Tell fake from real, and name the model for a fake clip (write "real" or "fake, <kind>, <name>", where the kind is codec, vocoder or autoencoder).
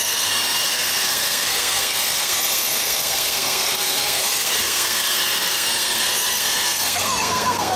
fake, codec, SNAC